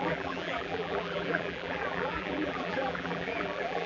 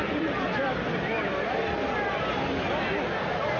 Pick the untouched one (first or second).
second